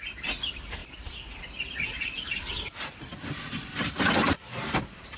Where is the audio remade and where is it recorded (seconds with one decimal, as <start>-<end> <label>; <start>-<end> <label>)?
0.0-5.2 recorded